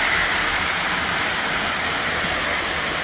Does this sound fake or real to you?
real